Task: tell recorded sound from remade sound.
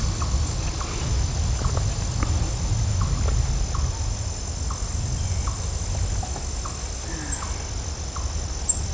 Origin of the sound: recorded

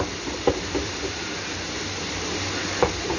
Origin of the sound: recorded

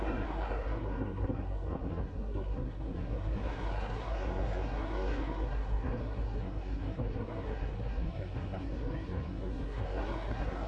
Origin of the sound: remade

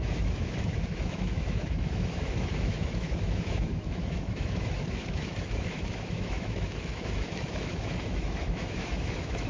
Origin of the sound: remade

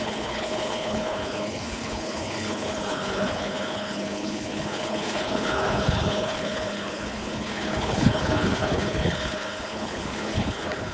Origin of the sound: remade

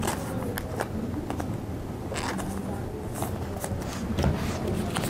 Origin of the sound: recorded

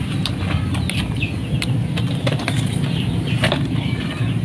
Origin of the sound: recorded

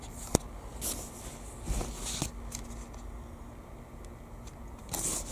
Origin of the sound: recorded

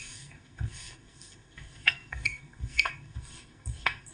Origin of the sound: remade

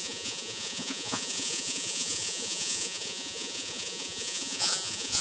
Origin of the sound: remade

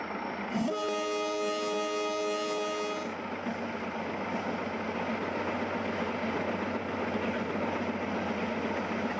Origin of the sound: recorded